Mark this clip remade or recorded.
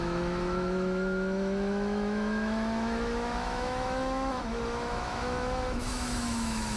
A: remade